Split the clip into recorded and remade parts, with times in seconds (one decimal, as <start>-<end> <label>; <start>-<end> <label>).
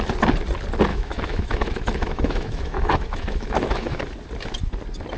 0.0-0.9 recorded; 0.9-4.0 remade; 4.0-5.2 recorded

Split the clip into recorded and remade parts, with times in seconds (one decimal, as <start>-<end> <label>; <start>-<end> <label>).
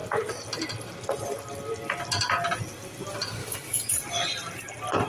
0.0-3.4 recorded; 3.4-3.9 remade; 3.9-5.1 recorded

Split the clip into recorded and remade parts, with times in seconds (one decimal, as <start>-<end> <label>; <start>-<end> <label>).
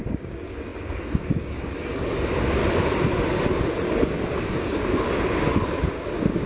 0.0-2.6 remade; 2.6-4.1 recorded; 4.1-5.6 remade; 5.6-6.5 recorded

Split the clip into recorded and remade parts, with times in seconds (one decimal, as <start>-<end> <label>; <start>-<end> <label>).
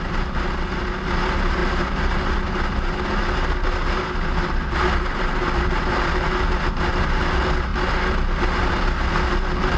0.0-9.8 recorded